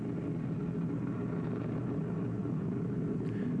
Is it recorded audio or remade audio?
recorded